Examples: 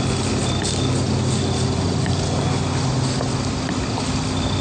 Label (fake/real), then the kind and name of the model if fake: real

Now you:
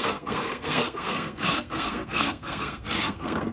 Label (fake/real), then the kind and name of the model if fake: fake, codec, SNAC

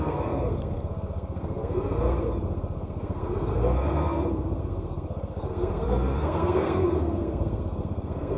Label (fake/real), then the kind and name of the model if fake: fake, codec, SNAC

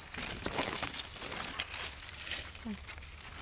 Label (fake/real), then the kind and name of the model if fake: real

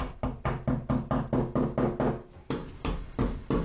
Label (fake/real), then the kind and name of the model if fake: real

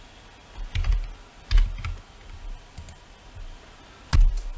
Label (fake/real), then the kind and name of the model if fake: real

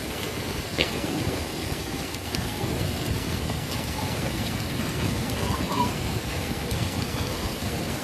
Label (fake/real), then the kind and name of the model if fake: fake, codec, SNAC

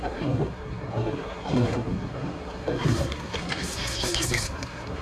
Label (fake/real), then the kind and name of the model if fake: fake, codec, SNAC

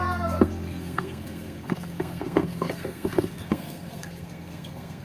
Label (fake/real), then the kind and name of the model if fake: fake, codec, SNAC